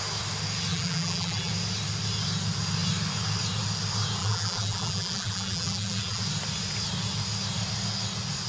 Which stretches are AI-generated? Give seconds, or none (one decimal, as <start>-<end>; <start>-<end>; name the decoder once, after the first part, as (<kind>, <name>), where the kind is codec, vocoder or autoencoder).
0.7-1.5 (vocoder, BigVGAN v2); 4.2-6.2